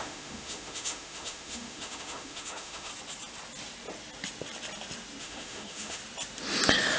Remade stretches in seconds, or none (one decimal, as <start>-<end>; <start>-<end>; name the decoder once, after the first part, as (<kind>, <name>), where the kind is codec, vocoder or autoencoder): 0.0-2.9 (autoencoder, DAC-VAE); 5.2-6.0